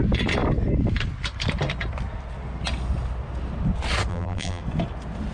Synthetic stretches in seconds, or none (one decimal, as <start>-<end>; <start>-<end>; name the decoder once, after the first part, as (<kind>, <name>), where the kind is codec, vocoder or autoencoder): 4.1-4.6 (vocoder, BigVGAN v2)